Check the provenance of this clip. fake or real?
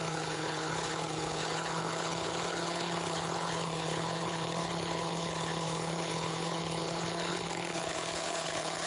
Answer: fake